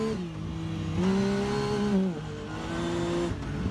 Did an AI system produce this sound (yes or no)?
no